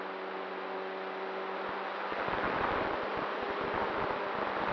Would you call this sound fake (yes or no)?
no